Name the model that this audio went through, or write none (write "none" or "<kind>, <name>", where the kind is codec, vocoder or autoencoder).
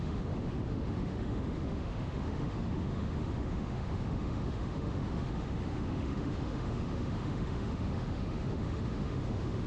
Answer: autoencoder, DAC-VAE